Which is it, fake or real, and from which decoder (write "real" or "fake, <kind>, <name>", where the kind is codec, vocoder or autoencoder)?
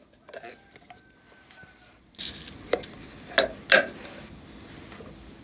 real